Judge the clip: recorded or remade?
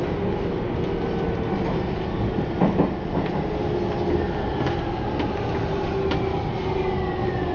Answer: recorded